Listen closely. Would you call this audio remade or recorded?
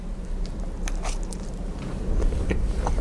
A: recorded